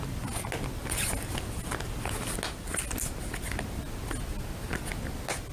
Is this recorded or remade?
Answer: recorded